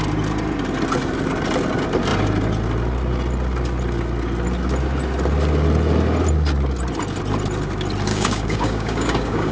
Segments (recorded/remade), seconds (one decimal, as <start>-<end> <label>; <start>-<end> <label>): 0.0-8.1 recorded; 8.1-9.5 remade